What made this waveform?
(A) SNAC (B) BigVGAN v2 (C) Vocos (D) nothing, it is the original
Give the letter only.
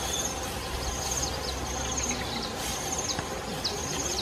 D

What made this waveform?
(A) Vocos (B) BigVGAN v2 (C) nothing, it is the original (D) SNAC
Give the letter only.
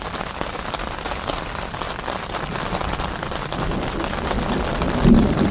C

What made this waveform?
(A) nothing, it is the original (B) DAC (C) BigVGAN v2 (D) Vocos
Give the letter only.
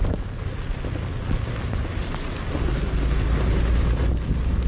A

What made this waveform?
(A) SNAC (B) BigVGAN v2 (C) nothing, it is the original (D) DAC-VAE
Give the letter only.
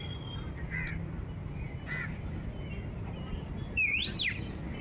C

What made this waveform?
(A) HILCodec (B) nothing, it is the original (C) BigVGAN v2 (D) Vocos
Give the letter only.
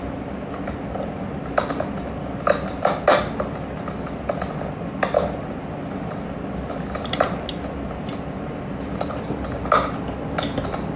B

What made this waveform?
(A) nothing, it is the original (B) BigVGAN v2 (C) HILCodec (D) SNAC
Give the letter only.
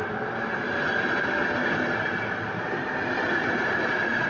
A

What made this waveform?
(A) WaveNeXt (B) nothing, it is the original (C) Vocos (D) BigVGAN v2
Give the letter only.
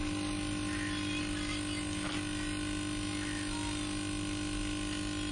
B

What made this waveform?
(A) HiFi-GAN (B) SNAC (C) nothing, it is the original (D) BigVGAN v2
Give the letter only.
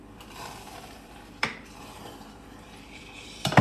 D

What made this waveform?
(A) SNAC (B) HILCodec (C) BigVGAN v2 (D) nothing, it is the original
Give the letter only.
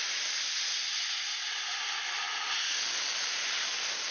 D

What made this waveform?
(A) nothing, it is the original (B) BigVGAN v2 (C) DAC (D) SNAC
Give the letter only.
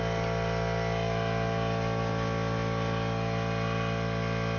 A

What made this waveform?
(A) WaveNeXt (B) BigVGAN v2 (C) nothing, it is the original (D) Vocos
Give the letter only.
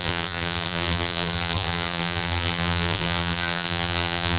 B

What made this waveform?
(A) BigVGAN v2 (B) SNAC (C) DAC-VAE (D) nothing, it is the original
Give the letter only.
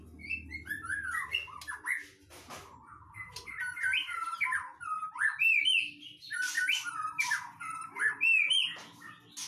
D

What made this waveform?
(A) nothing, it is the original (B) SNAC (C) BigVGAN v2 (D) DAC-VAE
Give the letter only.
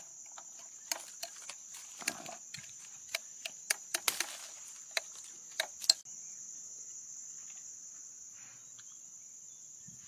A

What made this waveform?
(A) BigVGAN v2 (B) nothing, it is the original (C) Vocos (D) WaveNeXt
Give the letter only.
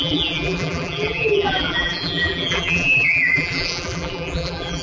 A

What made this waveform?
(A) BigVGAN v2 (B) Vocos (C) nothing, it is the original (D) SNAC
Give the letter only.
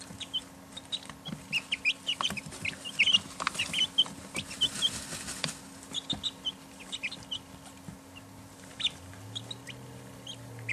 C